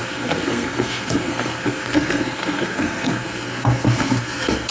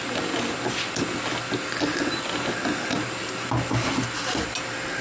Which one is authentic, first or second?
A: second